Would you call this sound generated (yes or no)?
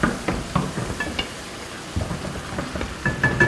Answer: no